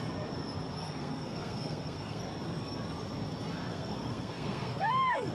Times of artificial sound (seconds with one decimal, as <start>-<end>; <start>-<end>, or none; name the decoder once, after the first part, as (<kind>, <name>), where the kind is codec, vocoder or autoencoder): 0.8-2.2 (codec, SNAC); 3.7-5.3